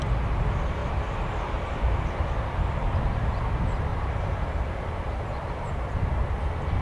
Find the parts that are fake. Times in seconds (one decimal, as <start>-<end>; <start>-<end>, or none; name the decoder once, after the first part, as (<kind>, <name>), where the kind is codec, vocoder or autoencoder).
0.8-1.8 (vocoder, BigVGAN v2); 3.9-6.3